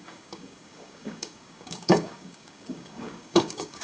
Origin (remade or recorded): remade